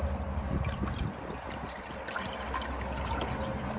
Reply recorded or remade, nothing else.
recorded